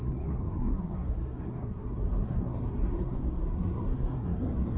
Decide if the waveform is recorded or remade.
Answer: remade